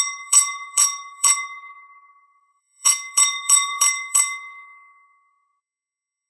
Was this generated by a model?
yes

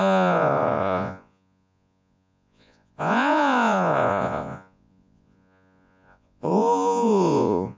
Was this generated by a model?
yes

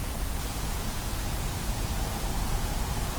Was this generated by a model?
yes